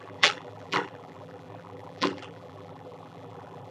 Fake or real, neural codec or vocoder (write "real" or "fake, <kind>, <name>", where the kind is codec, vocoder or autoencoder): fake, vocoder, BigVGAN v2